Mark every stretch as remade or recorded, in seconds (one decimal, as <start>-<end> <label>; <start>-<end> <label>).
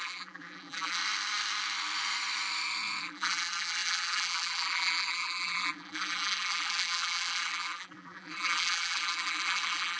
0.0-1.0 remade; 1.0-3.0 recorded; 3.0-10.0 remade